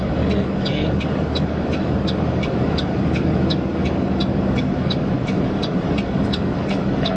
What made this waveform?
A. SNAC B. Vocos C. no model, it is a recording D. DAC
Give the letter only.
D